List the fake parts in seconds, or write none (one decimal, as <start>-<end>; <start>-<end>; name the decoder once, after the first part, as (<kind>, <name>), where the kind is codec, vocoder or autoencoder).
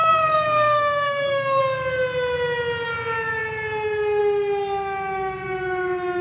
0.0-1.6 (codec, SNAC)